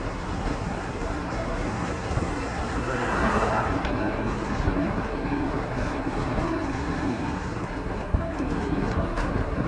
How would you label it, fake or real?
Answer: fake